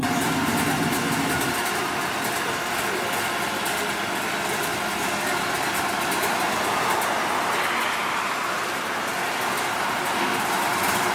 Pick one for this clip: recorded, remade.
recorded